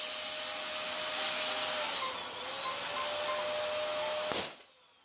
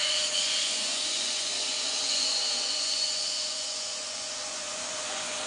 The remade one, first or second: second